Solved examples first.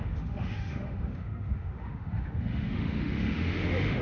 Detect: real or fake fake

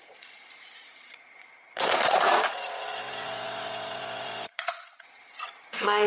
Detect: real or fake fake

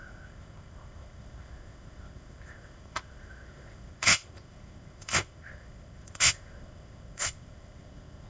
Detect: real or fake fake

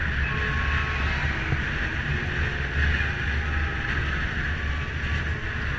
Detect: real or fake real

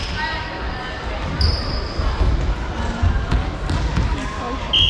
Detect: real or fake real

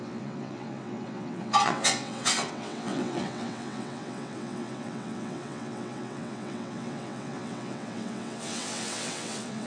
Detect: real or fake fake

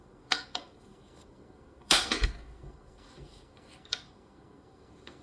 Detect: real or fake fake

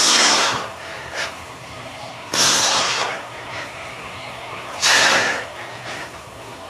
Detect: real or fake fake